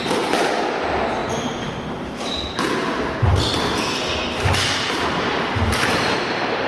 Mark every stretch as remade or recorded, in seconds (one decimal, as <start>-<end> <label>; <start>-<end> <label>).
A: 0.0-6.7 recorded